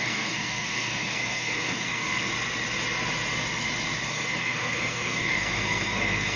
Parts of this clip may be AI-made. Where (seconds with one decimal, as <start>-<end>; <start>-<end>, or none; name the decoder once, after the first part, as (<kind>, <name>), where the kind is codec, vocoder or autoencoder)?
0.0-2.3 (codec, SNAC); 4.1-6.4